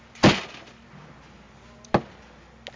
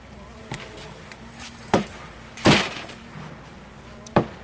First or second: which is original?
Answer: first